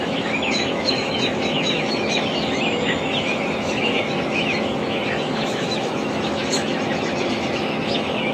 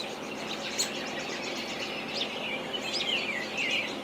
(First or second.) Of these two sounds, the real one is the second